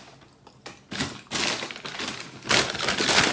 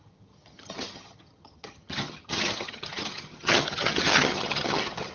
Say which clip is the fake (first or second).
second